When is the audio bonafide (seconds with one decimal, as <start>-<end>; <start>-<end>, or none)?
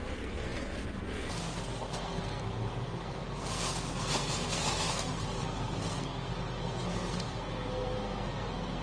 none